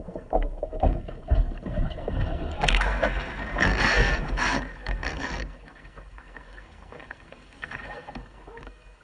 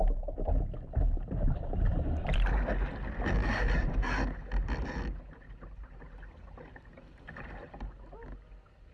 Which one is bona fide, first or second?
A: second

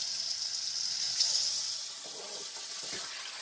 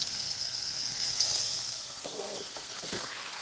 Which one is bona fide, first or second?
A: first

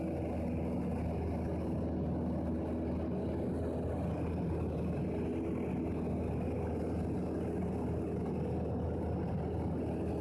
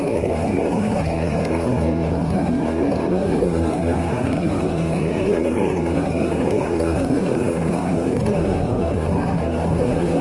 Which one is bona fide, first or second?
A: first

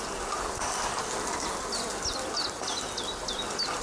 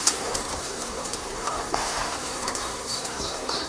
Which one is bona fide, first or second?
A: first